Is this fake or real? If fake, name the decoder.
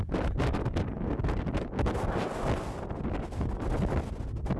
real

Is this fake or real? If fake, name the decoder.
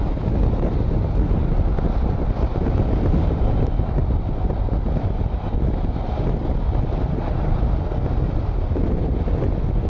real